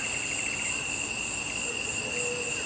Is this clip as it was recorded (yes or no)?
yes